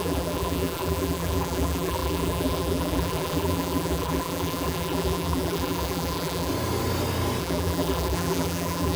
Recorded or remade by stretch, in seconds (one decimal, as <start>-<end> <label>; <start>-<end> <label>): 0.0-6.5 remade; 6.5-7.4 recorded; 7.4-9.0 remade